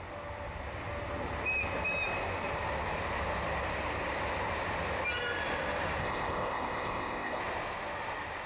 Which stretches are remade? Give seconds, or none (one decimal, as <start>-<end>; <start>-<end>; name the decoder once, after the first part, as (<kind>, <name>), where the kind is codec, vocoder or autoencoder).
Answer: 6.0-7.4 (codec, ZipCodec)